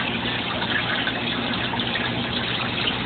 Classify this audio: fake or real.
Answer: real